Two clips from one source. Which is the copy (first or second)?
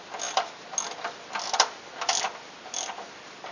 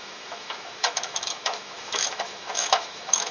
second